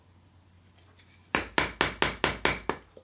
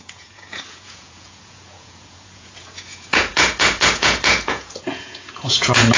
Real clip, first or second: first